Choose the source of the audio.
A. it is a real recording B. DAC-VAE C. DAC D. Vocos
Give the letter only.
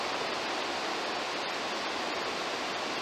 A